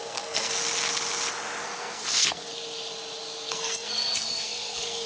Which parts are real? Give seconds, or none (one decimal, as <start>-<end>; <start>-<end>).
0.6-1.6; 2.5-3.5